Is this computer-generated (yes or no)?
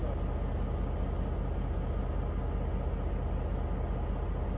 no